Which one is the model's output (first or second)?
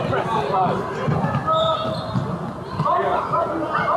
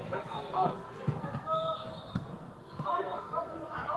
second